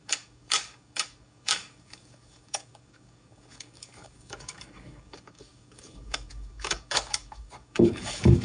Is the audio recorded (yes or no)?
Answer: no